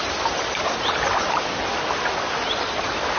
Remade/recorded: recorded